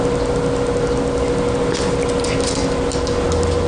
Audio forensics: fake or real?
real